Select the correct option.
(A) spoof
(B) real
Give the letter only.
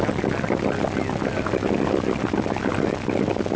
B